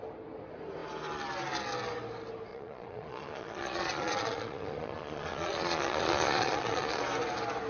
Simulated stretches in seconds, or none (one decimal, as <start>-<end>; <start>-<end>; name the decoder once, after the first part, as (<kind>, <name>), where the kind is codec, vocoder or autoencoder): 2.5-7.0 (vocoder, Vocos)